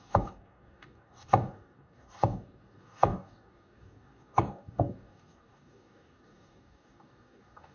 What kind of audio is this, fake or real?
fake